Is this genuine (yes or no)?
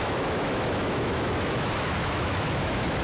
no